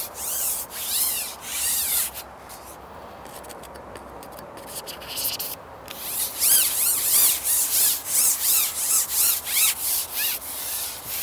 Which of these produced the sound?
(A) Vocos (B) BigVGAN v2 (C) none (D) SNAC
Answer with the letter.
C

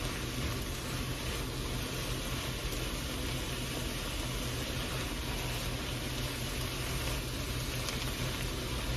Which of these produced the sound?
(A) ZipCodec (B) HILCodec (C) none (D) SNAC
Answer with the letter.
C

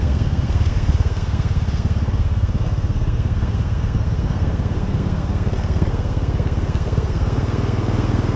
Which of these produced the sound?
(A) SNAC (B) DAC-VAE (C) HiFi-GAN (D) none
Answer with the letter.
A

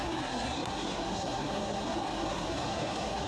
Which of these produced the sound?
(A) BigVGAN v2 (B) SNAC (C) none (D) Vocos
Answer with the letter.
B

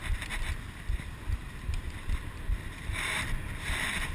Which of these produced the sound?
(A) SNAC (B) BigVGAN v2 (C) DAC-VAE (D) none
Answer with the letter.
D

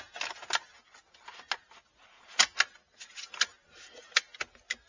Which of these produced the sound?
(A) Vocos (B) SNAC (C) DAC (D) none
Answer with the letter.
D